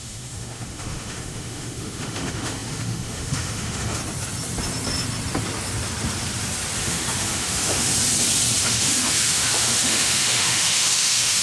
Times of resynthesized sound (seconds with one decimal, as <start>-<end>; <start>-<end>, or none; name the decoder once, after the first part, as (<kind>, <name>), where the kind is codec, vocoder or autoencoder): 0.0-4.0 (autoencoder, DAC-VAE); 6.8-7.9; 8.6-11.4